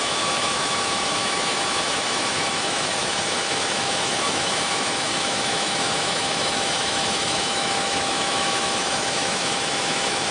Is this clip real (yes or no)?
no